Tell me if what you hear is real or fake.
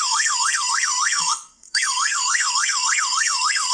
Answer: fake